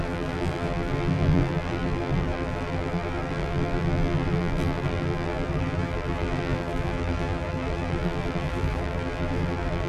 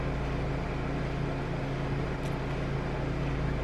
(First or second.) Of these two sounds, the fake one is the first